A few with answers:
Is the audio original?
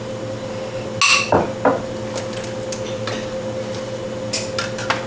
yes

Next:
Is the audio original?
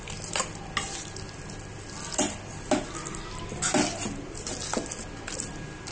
yes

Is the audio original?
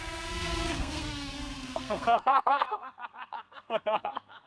no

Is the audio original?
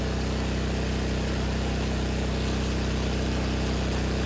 yes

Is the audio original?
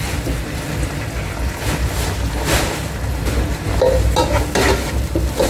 yes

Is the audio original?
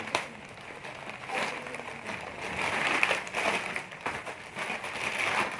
yes